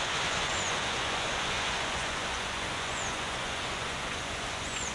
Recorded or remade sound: remade